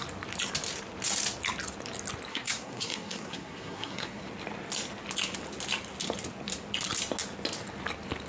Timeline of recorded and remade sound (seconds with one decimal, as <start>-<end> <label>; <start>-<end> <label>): 0.0-2.3 recorded; 2.3-4.2 remade; 4.2-8.3 recorded